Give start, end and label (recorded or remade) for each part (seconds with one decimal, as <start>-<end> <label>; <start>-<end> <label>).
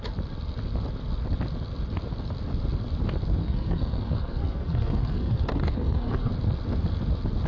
0.0-3.4 recorded; 3.4-6.3 remade; 6.3-7.5 recorded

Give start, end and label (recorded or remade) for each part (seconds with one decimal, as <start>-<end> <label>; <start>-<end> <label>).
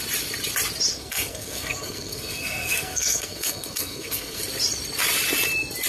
0.0-0.9 recorded; 0.9-4.4 remade; 4.4-5.9 recorded